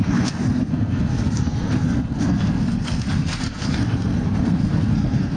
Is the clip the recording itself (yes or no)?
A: no